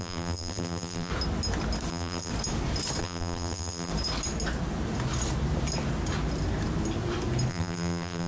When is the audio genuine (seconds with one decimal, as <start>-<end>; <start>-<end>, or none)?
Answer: 1.1-1.9; 2.3-3.0; 3.9-7.5